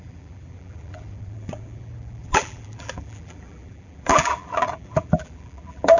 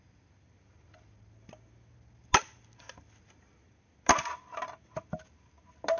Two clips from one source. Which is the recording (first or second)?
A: second